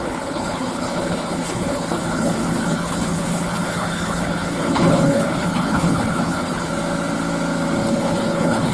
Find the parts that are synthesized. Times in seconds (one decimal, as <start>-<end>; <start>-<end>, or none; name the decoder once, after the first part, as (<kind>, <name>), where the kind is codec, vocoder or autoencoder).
0.0-6.7 (codec, HILCodec); 7.9-8.7